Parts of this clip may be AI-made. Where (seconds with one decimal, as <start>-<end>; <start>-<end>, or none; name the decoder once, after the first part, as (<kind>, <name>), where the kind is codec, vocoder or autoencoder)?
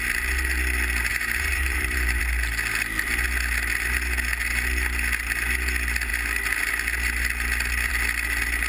1.1-2.2 (vocoder, BigVGAN v2)